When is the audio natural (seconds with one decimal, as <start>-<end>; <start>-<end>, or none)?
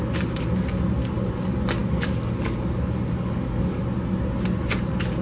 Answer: 0.0-1.8; 3.8-5.2